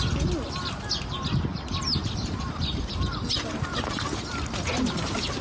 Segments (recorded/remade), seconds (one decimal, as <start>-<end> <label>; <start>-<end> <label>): 0.0-1.5 recorded; 1.5-4.7 remade; 4.7-5.4 recorded